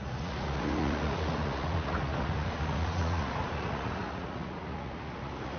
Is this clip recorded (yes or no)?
no